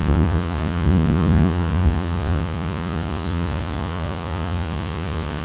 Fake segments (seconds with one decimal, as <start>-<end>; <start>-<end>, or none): 0.0-5.4